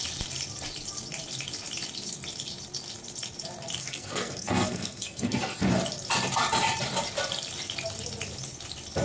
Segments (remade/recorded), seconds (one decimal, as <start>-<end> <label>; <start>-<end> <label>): 0.0-3.8 recorded; 3.8-5.6 remade; 5.6-9.0 recorded